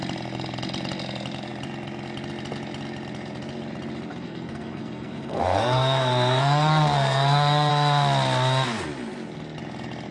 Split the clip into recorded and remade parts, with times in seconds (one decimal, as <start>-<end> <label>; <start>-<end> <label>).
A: 0.0-4.1 recorded; 4.1-7.7 remade; 7.7-10.1 recorded